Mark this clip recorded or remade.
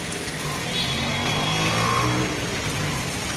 recorded